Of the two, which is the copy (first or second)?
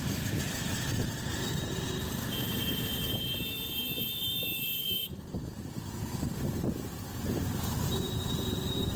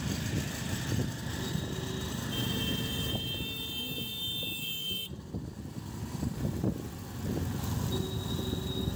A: first